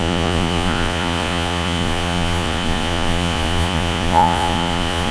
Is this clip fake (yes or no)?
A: yes